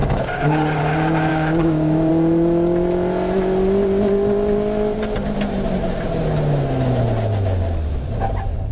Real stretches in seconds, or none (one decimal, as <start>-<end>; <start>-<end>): 0.8-1.3; 2.1-8.7